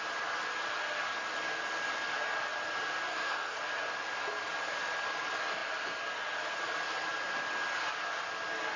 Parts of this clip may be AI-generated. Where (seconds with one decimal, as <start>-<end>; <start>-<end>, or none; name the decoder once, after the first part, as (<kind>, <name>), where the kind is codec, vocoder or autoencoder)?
3.1-3.6 (codec, SNAC)